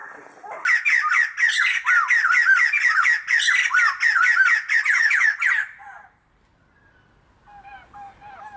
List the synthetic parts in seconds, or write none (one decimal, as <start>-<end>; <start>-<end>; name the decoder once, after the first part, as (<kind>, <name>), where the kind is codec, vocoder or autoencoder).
none